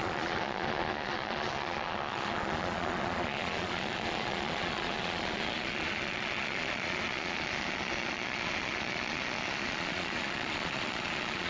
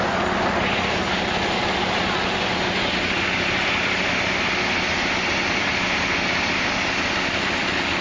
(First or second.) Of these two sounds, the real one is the second